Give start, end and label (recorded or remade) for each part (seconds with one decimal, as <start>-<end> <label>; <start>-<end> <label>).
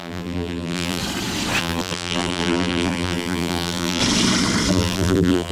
0.0-1.0 remade; 1.0-1.6 recorded; 1.6-4.0 remade; 4.0-4.7 recorded; 4.7-5.5 remade